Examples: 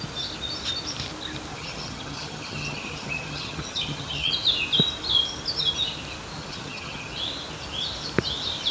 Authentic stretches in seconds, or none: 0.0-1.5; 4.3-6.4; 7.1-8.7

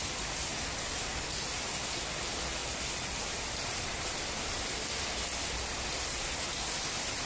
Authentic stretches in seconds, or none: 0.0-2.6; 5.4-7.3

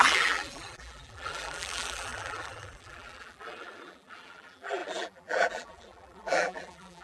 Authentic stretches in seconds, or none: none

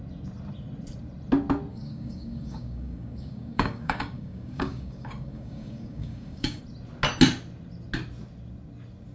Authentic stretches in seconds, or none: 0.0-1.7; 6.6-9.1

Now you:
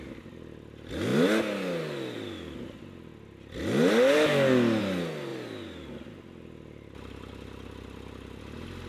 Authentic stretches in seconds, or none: 0.0-8.9